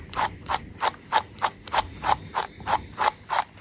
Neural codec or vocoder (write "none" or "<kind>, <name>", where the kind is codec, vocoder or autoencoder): vocoder, BigVGAN v2